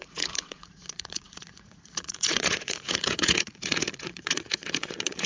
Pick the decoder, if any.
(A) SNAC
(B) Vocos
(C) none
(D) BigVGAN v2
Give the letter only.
B